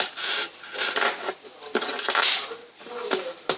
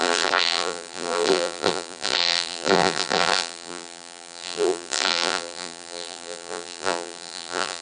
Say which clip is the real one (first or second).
first